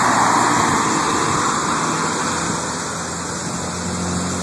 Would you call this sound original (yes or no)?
yes